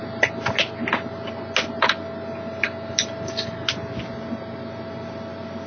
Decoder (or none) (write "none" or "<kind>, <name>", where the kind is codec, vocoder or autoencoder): none